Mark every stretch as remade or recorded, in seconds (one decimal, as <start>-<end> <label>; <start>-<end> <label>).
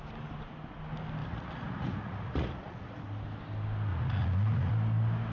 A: 0.0-1.2 recorded; 1.2-3.0 remade; 3.0-3.9 recorded; 3.9-4.7 remade; 4.7-5.3 recorded